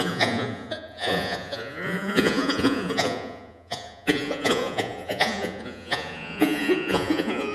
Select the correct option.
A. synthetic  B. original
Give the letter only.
A